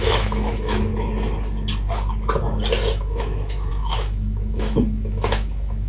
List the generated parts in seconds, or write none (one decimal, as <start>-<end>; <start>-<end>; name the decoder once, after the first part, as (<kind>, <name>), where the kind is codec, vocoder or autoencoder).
0.0-0.9 (autoencoder, DAC-VAE); 2.9-5.9